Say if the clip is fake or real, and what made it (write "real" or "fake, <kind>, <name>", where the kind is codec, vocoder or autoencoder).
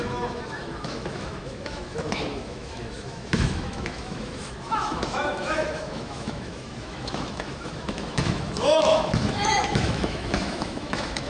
fake, autoencoder, DAC-VAE